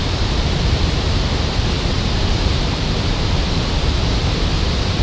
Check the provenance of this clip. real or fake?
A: fake